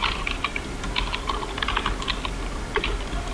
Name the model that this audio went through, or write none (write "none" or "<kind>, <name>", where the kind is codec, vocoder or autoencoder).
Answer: none